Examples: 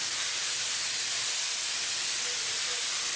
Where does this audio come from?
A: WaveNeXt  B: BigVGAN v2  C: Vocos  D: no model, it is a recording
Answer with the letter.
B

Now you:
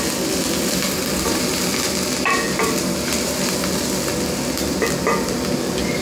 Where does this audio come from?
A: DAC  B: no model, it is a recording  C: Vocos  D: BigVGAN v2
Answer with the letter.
B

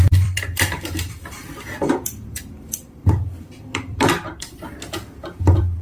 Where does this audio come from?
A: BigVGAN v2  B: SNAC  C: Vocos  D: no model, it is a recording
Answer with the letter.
A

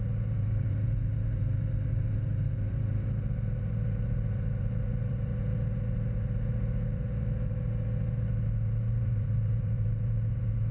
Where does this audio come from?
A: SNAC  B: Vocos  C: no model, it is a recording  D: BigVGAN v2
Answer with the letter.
D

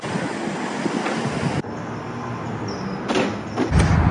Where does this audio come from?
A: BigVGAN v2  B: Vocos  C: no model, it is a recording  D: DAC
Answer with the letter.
C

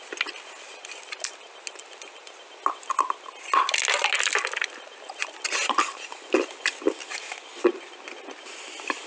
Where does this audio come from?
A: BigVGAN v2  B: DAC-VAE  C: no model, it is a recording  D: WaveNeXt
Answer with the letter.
C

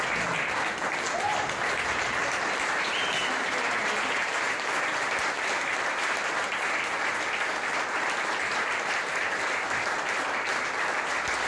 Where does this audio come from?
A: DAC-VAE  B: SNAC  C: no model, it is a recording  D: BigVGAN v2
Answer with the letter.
C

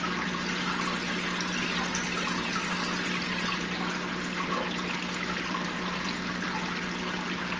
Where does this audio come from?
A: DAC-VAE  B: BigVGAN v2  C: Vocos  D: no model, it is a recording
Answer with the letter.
D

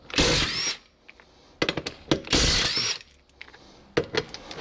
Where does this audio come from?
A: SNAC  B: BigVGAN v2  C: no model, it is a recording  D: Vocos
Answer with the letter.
C